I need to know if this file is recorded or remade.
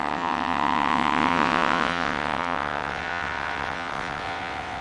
remade